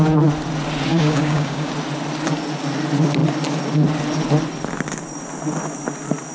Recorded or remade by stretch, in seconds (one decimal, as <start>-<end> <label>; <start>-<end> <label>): 0.0-0.9 recorded; 0.9-1.7 remade; 1.7-6.3 recorded

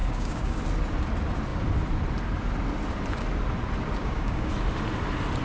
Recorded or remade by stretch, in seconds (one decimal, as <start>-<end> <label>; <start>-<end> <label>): 0.0-0.6 remade; 0.6-4.0 recorded; 4.0-4.5 remade; 4.5-5.4 recorded

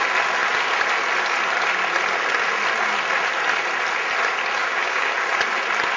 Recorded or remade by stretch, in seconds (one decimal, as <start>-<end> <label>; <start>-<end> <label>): 0.0-4.6 recorded; 4.6-5.1 remade; 5.1-6.0 recorded